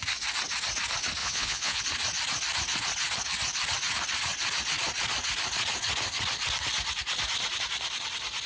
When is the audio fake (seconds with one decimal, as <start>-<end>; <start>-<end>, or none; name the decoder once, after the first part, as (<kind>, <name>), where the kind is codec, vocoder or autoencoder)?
1.2-1.8 (vocoder, Vocos)